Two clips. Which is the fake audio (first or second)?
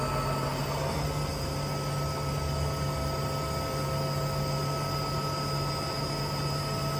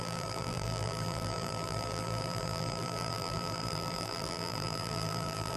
second